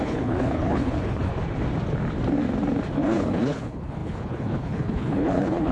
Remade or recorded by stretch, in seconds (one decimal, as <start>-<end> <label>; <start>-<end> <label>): 0.0-1.3 remade; 1.3-2.9 recorded; 2.9-5.7 remade